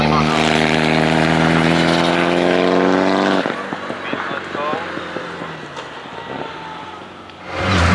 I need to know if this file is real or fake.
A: real